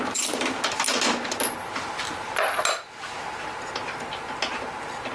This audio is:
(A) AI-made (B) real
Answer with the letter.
B